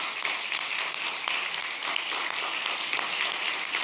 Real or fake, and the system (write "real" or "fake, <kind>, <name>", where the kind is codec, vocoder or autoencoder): real